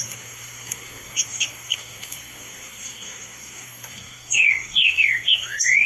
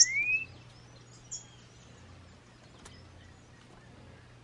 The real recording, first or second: second